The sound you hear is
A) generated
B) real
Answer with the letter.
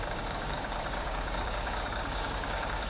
A